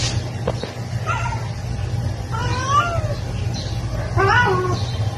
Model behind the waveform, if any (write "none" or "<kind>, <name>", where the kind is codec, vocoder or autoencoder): none